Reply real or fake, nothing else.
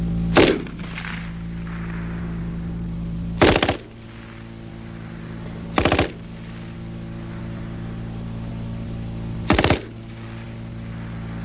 real